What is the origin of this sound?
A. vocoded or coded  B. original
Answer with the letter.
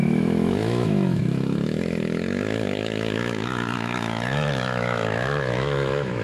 A